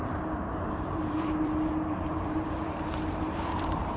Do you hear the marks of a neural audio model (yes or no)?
yes